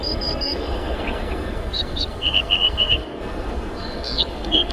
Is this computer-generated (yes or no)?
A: yes